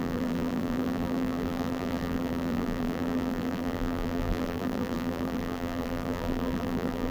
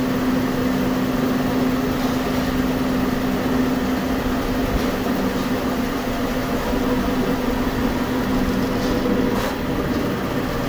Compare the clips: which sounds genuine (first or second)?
second